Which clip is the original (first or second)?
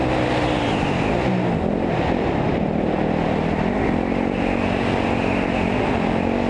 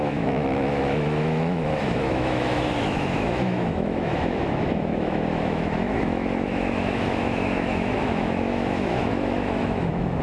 first